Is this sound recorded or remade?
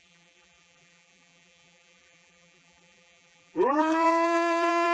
remade